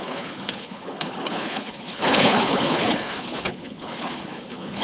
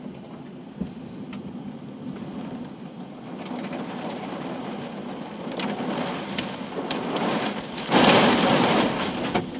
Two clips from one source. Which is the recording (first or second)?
second